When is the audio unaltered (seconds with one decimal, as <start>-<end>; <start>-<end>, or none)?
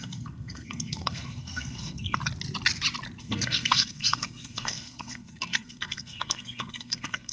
2.2-3.2